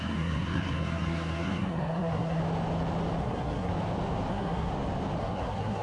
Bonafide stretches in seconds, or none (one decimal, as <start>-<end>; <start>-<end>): 2.4-3.2; 3.7-4.3; 4.7-5.2